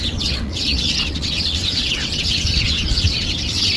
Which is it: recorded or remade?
remade